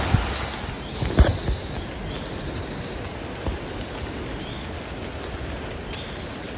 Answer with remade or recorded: recorded